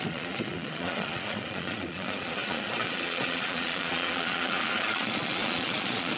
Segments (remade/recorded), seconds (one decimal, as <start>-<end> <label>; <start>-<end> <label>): 0.0-6.2 remade